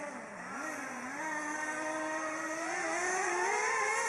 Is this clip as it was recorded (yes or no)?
yes